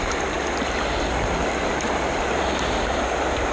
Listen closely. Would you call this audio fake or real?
real